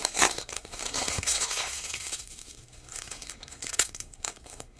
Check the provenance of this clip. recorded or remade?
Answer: remade